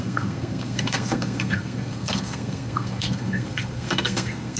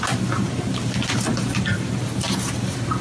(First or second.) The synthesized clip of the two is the first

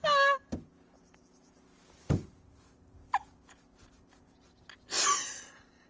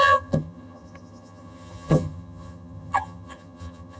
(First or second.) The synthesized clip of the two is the second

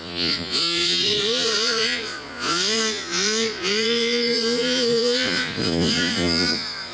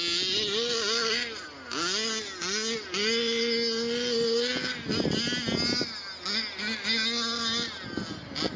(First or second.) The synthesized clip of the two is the first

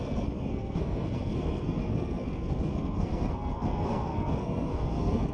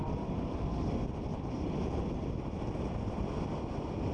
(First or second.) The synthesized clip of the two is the first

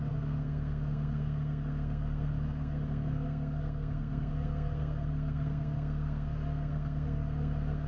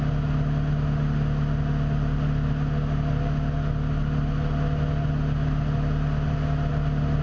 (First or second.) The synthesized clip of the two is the first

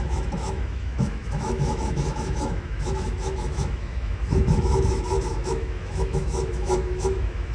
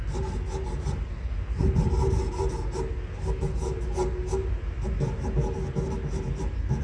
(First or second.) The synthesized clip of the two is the first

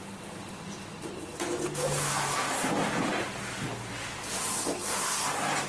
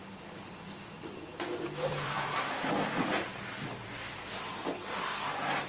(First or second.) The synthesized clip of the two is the second